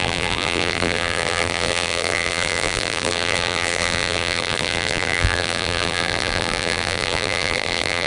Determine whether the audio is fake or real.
fake